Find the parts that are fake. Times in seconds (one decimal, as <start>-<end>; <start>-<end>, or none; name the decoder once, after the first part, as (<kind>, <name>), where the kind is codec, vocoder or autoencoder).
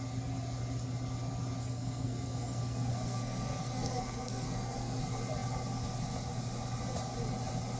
1.6-5.0 (codec, SNAC)